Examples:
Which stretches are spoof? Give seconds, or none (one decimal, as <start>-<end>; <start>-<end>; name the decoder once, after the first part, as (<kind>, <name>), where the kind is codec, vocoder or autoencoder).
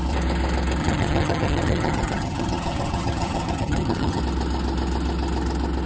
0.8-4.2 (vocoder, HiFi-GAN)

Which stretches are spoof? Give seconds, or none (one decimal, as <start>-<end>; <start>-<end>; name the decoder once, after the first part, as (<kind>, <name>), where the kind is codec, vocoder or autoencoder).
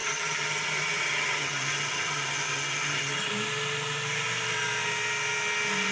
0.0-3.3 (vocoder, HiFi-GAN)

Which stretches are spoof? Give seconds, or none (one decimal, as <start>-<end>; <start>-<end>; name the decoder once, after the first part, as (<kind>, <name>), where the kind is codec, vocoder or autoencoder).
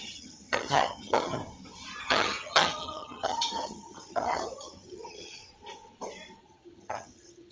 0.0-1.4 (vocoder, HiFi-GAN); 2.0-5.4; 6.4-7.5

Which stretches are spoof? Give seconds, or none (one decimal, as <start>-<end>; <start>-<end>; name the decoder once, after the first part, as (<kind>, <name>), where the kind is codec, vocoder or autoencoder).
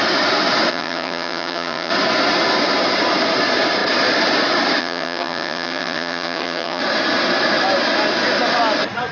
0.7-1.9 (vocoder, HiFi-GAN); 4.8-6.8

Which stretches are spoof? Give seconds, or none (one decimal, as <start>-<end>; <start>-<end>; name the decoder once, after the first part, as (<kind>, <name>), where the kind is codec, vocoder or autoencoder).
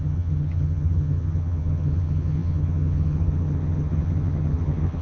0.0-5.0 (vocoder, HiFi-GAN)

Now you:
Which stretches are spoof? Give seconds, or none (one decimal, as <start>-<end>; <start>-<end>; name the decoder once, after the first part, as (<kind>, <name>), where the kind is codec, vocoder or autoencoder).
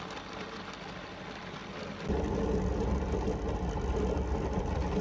none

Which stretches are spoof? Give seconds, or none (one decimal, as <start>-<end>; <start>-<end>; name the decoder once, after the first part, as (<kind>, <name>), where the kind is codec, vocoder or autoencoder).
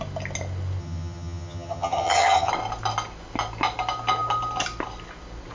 0.8-2.5 (vocoder, HiFi-GAN)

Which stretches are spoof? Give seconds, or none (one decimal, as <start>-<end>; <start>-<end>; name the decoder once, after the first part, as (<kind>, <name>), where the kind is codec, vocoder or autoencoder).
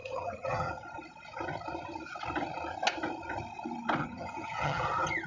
0.0-0.7 (vocoder, HiFi-GAN); 4.0-4.8